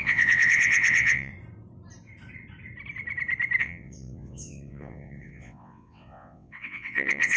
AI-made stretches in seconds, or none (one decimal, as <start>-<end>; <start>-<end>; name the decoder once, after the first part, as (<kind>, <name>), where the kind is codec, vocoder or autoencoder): 0.0-1.3 (vocoder, WaveNeXt); 3.6-7.4